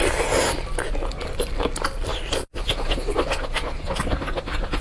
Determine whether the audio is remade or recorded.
recorded